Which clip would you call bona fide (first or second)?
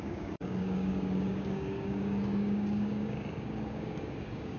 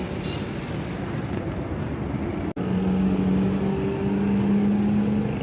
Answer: second